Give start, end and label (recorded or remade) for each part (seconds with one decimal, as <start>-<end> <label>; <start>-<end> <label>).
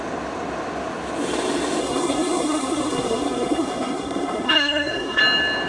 0.0-1.8 recorded; 1.8-5.2 remade; 5.2-5.7 recorded